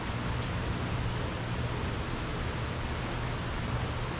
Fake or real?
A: real